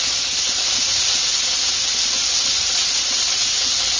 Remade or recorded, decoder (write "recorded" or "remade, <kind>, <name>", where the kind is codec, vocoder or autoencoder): recorded